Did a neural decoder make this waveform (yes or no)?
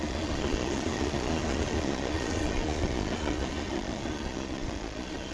yes